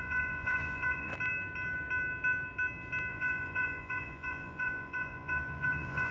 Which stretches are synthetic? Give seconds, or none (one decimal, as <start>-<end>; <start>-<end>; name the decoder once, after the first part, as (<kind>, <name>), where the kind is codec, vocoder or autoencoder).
0.0-1.1 (vocoder, Vocos); 3.1-6.1